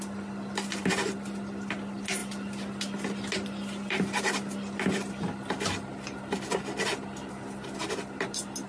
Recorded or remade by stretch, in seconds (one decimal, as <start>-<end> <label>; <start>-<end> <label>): 0.0-8.7 recorded